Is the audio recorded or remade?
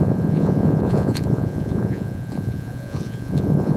remade